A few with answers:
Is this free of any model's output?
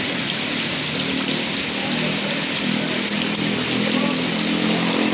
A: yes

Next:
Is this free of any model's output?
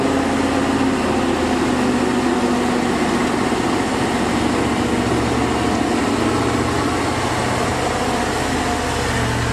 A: yes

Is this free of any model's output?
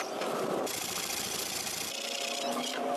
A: no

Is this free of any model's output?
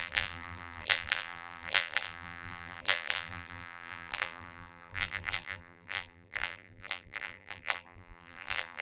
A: no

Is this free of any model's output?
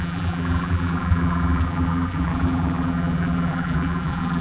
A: no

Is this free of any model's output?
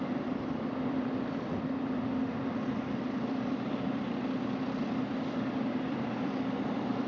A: no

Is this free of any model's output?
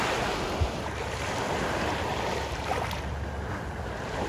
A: yes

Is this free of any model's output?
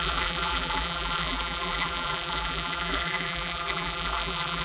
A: no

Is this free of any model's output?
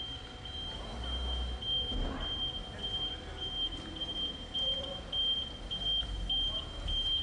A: yes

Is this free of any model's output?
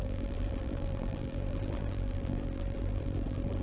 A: no